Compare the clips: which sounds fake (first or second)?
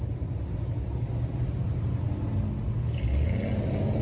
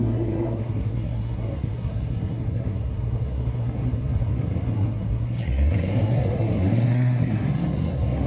second